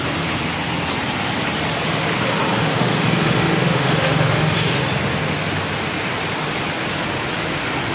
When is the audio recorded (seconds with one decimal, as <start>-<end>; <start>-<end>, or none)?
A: 0.0-2.6; 4.8-7.9